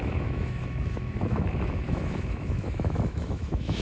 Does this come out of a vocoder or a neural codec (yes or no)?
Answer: yes